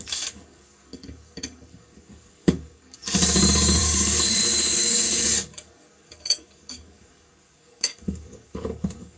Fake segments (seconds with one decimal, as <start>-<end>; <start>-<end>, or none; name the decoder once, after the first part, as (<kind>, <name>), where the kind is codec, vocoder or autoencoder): 0.0-9.2 (codec, DAC)